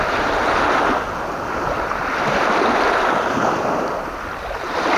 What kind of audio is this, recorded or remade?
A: recorded